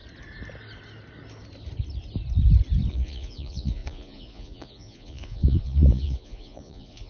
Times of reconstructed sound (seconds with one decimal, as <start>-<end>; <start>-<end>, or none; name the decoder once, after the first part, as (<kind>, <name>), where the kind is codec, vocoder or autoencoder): 2.9-7.1 (vocoder, Vocos)